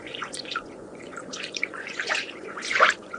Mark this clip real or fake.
fake